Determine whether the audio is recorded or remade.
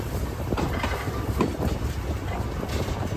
recorded